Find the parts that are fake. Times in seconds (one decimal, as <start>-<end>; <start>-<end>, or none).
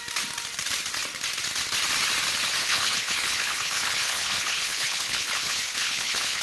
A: 2.6-6.4